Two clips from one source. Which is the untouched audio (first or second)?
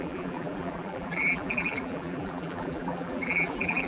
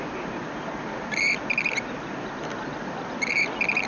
second